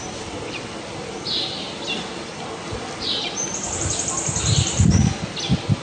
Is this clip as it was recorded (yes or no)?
yes